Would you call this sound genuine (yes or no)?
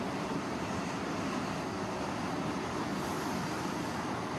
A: yes